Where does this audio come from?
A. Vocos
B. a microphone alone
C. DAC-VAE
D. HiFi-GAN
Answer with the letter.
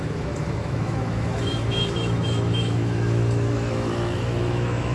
C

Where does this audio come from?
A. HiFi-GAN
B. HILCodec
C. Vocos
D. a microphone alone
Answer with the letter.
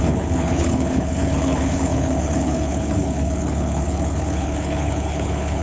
B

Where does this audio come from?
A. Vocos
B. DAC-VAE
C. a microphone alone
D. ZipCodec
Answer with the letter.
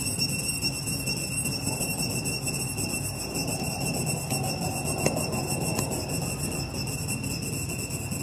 C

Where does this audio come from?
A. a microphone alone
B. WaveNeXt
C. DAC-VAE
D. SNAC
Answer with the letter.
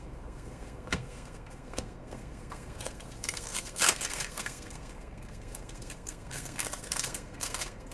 D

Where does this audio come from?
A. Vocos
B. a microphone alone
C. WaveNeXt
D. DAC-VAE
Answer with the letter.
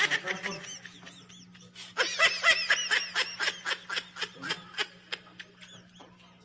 B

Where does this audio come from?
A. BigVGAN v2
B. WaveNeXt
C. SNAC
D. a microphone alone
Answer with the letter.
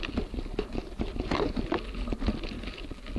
D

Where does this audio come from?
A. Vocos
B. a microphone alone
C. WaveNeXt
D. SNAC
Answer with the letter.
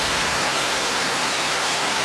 D